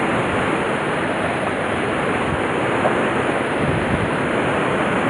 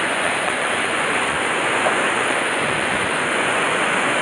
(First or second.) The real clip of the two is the first